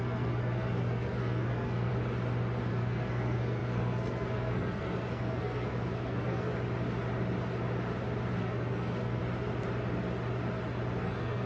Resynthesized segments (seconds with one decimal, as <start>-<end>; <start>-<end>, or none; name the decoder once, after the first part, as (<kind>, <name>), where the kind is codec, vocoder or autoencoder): 0.0-1.9 (codec, SNAC); 2.7-6.5; 8.4-9.2; 11.0-11.5